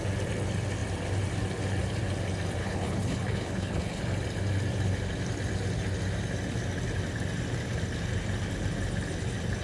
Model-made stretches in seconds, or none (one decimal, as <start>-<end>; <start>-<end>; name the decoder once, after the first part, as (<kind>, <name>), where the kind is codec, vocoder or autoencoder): 2.6-4.0 (codec, HILCodec)